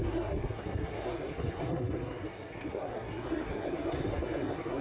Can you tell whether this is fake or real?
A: fake